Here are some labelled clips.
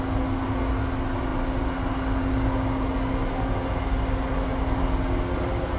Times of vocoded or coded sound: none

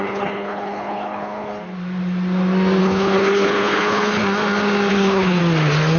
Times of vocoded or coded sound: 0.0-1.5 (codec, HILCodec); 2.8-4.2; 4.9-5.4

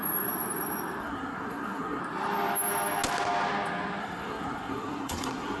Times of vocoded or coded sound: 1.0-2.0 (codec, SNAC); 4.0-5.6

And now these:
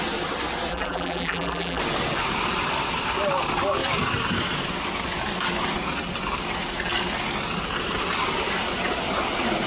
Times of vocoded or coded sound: 0.7-1.8 (vocoder, BigVGAN v2)

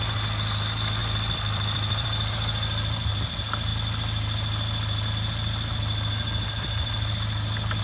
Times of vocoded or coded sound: 1.0-2.3 (vocoder, BigVGAN v2)